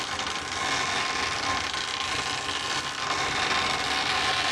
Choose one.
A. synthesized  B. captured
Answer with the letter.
B